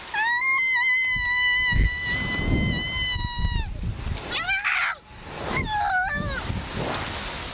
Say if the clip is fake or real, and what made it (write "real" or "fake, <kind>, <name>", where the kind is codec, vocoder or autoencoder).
real